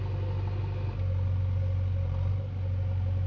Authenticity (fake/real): real